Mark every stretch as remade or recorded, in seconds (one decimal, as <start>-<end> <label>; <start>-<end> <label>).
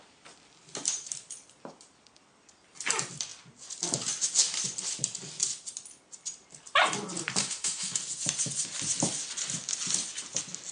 0.0-7.4 recorded; 7.4-8.0 remade; 8.0-10.7 recorded